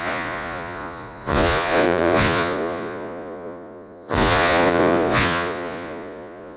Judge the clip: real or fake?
fake